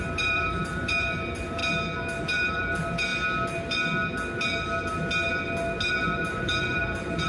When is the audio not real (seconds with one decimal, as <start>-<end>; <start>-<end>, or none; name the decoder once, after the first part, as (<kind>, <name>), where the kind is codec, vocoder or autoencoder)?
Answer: 0.0-1.6 (vocoder, BigVGAN v2); 2.2-3.1; 5.9-7.3